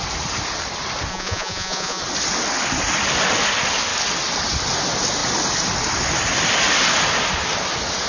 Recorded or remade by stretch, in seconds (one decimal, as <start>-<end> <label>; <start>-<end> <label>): 0.0-1.1 recorded; 1.1-2.0 remade; 2.0-8.1 recorded